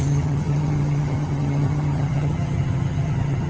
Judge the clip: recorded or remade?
remade